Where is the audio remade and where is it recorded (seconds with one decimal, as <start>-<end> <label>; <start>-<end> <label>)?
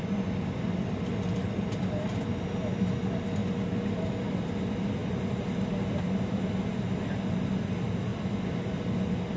0.0-9.4 recorded